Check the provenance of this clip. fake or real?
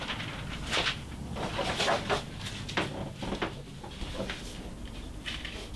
real